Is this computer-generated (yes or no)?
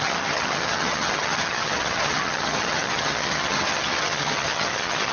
yes